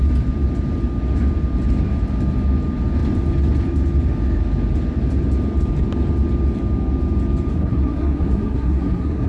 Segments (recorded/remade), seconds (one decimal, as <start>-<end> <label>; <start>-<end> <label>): 0.0-7.5 recorded; 7.5-9.3 remade